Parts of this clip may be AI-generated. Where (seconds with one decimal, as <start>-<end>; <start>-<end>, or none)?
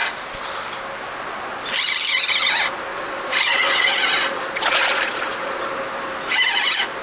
2.9-5.7